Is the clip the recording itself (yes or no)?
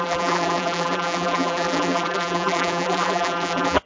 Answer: no